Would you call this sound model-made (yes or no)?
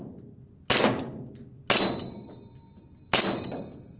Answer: no